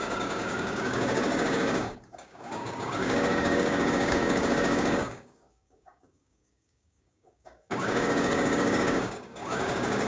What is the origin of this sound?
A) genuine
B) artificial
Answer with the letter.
B